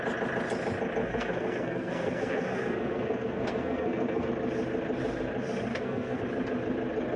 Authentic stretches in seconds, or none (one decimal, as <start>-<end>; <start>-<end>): 0.0-1.0; 4.3-5.7; 6.2-7.2